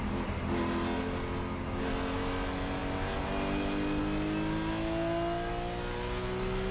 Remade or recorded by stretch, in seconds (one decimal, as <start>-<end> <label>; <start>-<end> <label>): 0.0-6.7 recorded